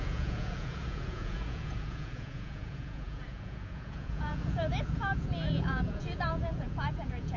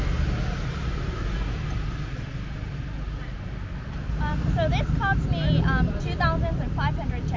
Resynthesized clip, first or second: first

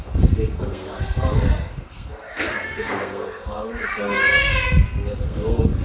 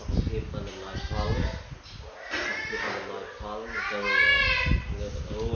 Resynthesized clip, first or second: first